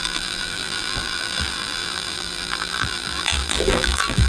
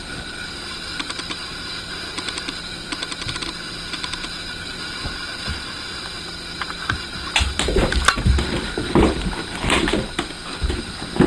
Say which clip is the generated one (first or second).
first